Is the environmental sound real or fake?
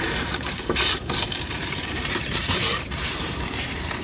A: fake